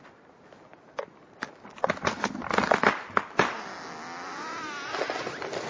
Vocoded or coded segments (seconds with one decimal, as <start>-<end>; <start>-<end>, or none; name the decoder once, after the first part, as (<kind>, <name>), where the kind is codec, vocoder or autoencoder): none